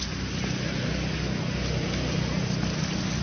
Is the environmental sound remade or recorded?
recorded